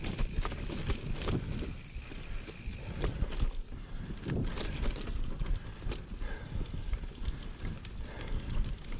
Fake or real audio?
real